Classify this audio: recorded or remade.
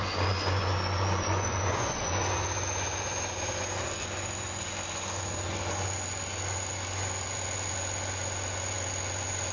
remade